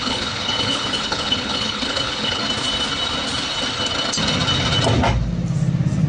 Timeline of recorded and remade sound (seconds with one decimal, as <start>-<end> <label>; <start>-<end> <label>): 0.0-2.4 remade; 2.4-6.1 recorded